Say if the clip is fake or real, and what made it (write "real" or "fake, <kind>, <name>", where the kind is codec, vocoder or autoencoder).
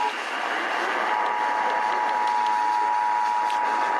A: real